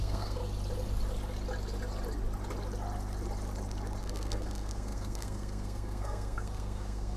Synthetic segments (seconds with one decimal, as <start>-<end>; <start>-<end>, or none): 0.0-0.4; 4.0-7.2